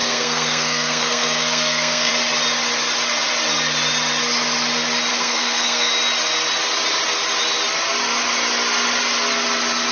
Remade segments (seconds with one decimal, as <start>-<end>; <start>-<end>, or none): 0.0-2.1; 5.1-5.9

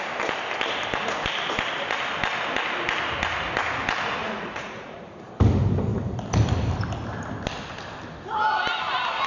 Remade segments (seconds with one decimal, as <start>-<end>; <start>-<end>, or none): 4.2-5.3